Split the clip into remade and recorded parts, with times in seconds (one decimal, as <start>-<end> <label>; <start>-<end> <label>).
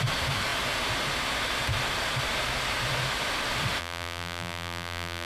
0.0-3.8 recorded; 3.8-5.3 remade